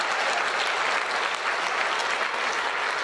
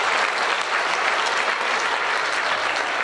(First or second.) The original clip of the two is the first